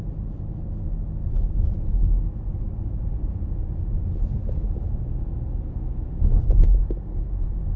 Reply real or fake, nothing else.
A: real